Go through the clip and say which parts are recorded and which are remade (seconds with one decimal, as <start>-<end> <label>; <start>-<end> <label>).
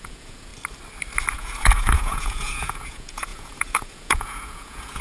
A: 0.0-0.5 remade; 0.5-1.3 recorded; 1.3-5.0 remade